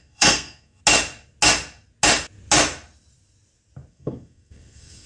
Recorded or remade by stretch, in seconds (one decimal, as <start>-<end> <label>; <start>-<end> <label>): 0.0-0.8 remade; 0.8-3.9 recorded; 3.9-5.1 remade